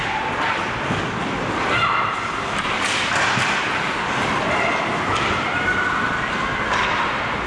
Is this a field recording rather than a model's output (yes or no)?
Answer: yes